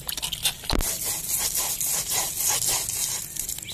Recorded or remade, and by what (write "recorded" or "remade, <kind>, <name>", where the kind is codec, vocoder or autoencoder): recorded